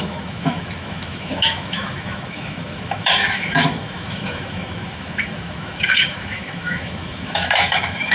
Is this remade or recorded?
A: remade